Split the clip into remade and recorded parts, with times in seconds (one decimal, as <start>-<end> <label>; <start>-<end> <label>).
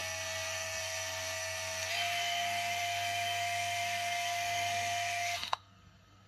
0.0-6.3 remade